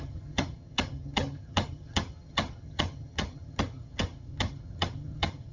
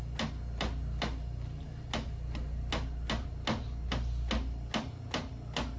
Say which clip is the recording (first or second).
second